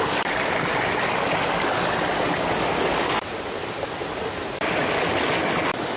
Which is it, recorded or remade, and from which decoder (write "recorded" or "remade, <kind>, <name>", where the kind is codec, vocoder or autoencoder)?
recorded